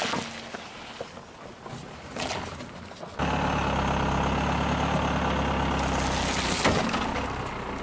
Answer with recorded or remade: recorded